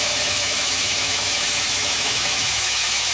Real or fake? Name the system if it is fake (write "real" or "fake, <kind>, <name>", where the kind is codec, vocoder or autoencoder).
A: fake, autoencoder, DAC-VAE